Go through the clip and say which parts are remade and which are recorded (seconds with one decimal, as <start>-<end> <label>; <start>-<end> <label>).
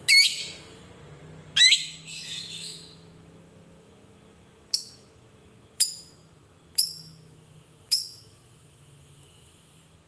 0.0-0.4 remade; 0.4-1.6 recorded; 1.6-10.1 remade